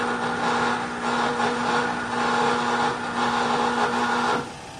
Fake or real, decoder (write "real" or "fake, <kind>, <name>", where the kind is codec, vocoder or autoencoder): real